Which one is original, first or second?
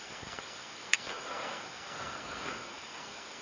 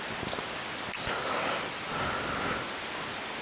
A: second